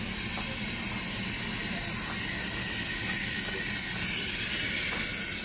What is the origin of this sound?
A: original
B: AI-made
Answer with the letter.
A